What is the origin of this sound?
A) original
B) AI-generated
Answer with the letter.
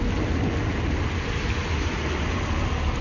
A